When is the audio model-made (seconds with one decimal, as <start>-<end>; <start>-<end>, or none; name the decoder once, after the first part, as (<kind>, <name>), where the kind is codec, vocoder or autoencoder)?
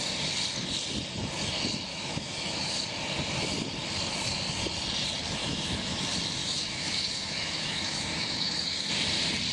1.9-2.8 (autoencoder, DAC-VAE); 5.4-6.0; 6.4-8.9